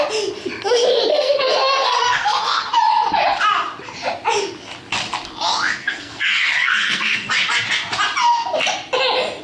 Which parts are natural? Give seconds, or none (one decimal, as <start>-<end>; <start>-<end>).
0.0-1.1; 2.7-5.8; 7.3-9.4